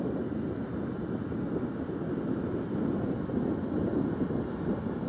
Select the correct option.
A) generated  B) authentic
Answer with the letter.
B